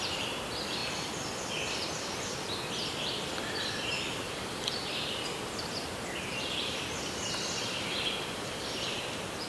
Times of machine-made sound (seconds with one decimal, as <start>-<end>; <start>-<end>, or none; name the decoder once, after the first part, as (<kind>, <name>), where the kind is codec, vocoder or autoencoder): 0.0-0.8 (vocoder, BigVGAN v2); 2.7-9.5